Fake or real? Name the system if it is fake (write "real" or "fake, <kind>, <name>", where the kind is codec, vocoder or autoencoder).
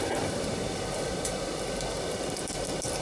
real